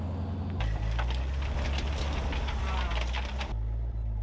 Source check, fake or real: real